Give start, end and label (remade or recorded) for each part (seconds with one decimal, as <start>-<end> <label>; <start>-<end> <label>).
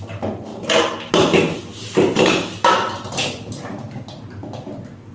0.0-5.1 recorded